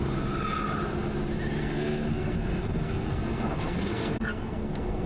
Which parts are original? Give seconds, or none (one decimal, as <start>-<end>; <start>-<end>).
0.0-1.6